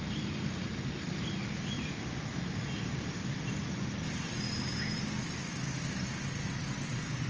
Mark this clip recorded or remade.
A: recorded